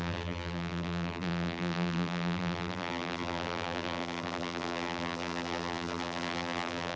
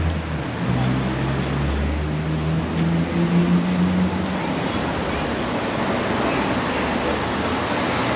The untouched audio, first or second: second